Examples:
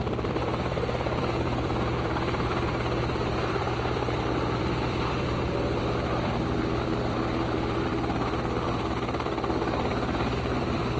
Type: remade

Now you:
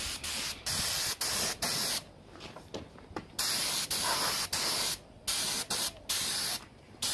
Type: recorded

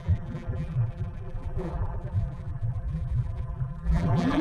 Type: remade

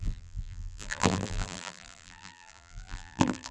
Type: remade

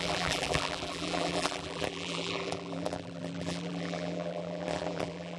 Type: remade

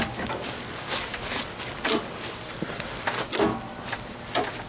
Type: recorded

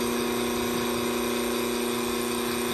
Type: recorded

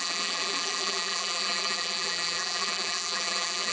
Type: remade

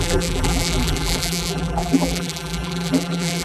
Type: remade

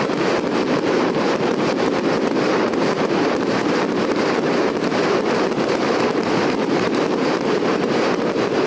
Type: remade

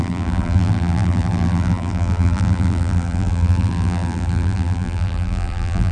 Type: remade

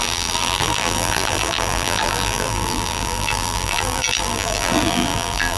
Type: remade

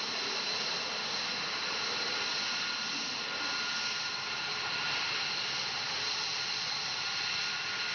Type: recorded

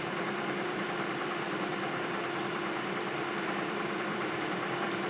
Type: remade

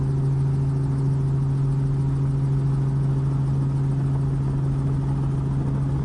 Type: recorded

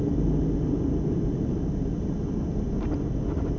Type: recorded